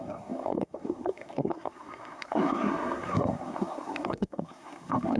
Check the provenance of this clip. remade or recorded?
remade